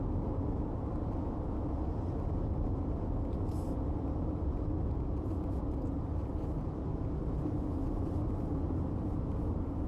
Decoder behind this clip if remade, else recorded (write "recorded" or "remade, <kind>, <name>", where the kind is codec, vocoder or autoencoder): recorded